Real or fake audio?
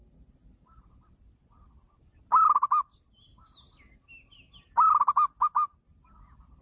real